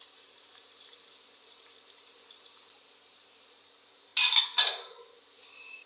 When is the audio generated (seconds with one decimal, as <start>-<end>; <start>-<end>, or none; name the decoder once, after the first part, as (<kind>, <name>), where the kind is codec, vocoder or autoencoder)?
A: 0.0-4.1 (vocoder, BigVGAN v2); 5.2-5.9